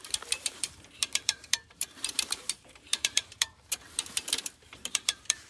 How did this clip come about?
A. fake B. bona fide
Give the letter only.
A